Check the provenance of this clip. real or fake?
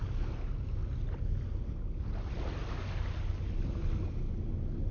real